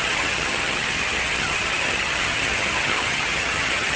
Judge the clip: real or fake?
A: fake